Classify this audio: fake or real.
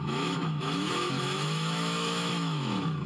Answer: fake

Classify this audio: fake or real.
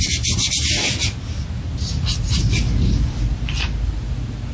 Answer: real